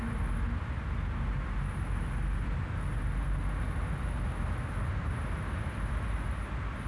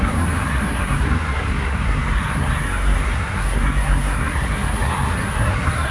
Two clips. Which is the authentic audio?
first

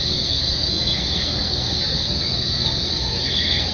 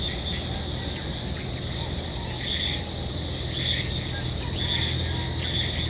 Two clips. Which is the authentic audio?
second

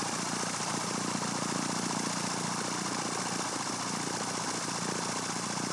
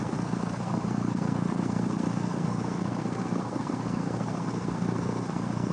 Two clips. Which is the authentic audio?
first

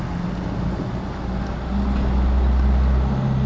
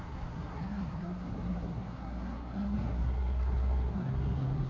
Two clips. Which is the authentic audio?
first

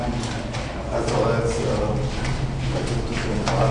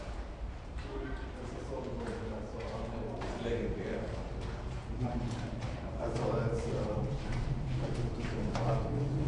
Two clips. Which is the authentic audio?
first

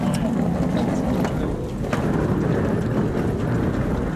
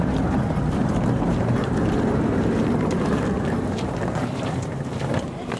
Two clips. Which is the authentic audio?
first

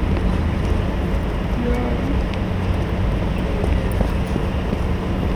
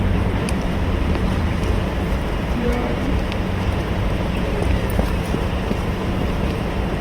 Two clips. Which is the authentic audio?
first